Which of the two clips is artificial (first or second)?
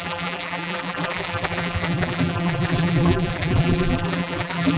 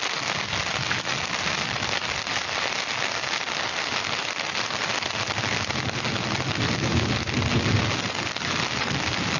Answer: first